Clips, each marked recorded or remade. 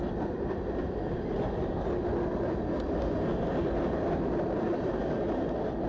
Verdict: recorded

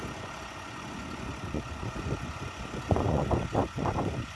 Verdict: remade